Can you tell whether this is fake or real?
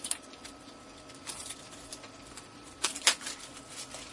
fake